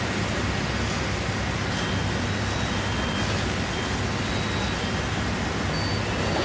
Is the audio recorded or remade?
recorded